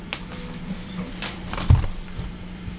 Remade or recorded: remade